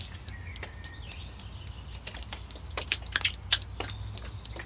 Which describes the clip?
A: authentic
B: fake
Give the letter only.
A